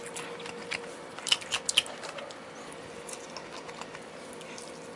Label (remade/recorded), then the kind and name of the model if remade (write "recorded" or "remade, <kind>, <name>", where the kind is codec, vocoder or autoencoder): recorded